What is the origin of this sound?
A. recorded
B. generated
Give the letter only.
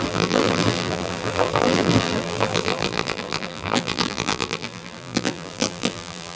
B